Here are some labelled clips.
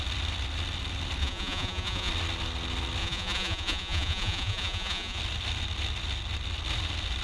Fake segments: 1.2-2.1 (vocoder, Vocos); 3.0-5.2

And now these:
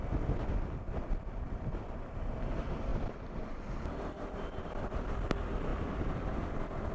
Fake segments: 2.9-3.6 (vocoder, BigVGAN v2); 5.7-6.5

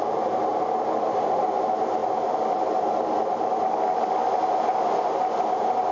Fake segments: none

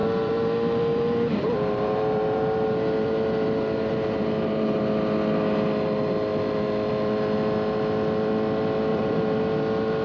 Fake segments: 0.0-4.8 (vocoder, BigVGAN v2); 8.9-9.4

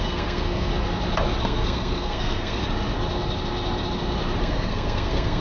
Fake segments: 0.0-0.7 (codec, SNAC); 1.4-2.6; 4.4-5.4

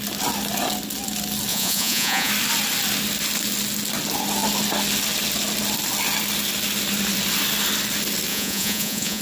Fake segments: 1.5-2.3 (vocoder, Vocos); 8.3-9.2

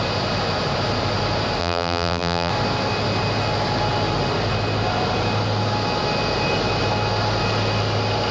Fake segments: 1.6-2.5 (vocoder, BigVGAN v2)

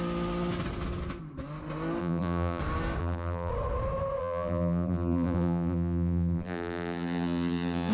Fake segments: 2.0-2.6 (vocoder, BigVGAN v2); 3.0-3.5; 4.2-7.9